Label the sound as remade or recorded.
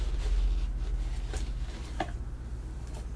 recorded